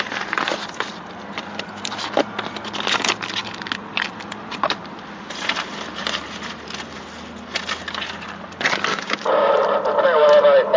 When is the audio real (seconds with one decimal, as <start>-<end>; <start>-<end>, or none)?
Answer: 0.0-8.9; 9.5-10.8